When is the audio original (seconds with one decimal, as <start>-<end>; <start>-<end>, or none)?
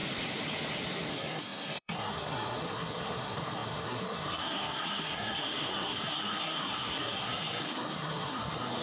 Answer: 0.0-1.1